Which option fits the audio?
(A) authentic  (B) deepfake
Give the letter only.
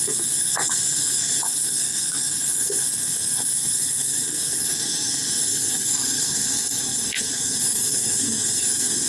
B